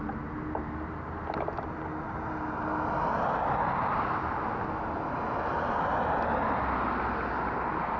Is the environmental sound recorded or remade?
recorded